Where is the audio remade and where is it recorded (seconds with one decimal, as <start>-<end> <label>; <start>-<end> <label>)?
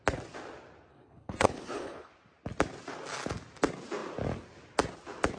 0.0-0.9 recorded; 0.9-2.1 remade; 2.1-5.4 recorded